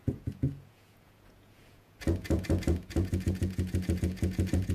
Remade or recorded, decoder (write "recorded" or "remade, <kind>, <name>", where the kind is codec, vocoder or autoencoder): remade, vocoder, Vocos